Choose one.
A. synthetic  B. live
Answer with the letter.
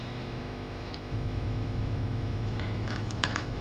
A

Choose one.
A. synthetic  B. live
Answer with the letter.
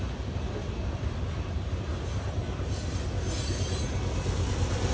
B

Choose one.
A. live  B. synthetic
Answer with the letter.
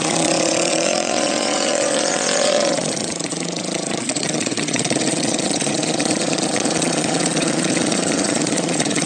B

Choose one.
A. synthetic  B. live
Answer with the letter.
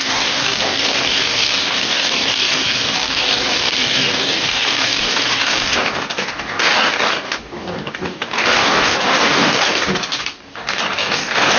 A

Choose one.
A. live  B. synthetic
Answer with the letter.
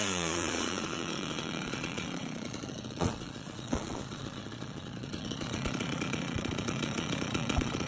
B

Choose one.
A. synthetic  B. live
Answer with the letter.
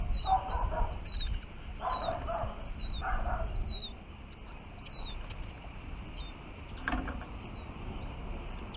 B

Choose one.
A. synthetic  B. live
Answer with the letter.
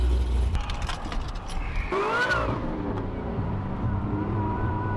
A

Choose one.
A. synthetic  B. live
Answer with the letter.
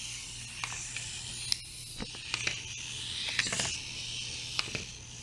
B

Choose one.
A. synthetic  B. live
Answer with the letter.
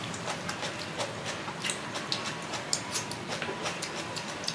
B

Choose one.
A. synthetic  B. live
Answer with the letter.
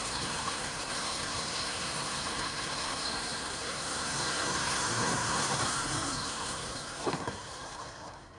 A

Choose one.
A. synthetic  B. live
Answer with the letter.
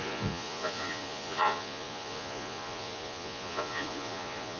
A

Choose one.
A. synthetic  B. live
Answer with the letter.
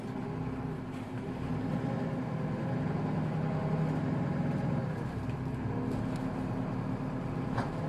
B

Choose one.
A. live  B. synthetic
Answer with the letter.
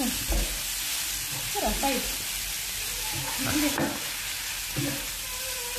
A